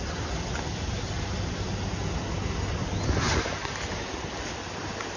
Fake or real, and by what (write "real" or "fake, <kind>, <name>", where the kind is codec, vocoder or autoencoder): real